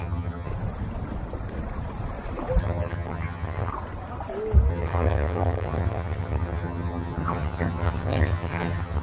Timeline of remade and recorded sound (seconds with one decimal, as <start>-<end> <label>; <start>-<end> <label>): 0.0-0.5 remade; 0.5-2.6 recorded; 2.6-3.7 remade; 3.7-4.7 recorded; 4.7-9.0 remade